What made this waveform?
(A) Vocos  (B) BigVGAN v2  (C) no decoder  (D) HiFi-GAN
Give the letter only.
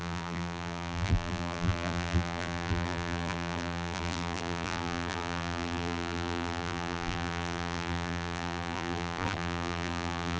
B